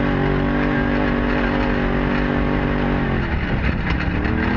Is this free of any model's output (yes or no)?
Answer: yes